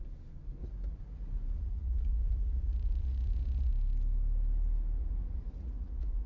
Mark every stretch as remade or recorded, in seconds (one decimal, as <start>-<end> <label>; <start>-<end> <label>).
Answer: 0.0-0.6 recorded; 0.6-3.7 remade; 3.7-5.0 recorded; 5.0-6.3 remade